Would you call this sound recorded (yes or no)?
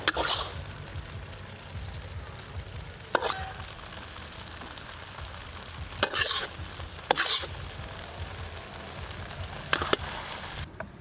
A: yes